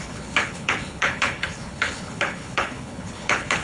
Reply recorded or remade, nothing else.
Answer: remade